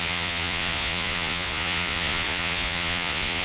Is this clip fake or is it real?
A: fake